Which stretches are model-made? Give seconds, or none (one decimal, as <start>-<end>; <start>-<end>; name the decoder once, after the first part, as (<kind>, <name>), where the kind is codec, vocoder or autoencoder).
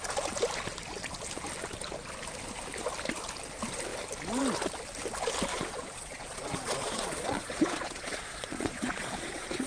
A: 5.5-9.7 (vocoder, Vocos)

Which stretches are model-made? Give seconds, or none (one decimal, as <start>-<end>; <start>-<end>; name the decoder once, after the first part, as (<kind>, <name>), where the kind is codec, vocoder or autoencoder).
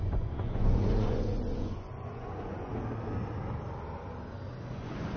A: 0.0-2.7 (vocoder, Vocos); 4.7-5.2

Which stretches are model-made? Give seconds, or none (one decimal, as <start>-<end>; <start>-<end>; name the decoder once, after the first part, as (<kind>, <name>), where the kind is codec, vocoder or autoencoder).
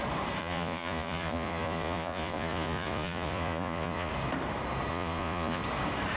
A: 0.4-4.1 (vocoder, Vocos); 4.9-5.6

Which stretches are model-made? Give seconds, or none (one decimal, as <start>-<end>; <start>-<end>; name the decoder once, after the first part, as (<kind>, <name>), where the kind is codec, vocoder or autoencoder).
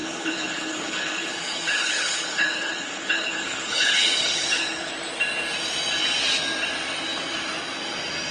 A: 0.0-4.9 (codec, HILCodec)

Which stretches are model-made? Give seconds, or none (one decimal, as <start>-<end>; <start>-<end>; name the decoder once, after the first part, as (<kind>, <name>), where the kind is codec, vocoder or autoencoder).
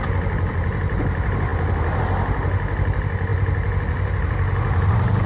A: none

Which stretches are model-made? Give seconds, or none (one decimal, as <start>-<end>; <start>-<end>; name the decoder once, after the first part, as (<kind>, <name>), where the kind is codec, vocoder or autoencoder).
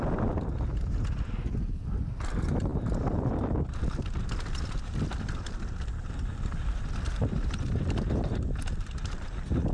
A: 2.7-6.8 (vocoder, BigVGAN v2)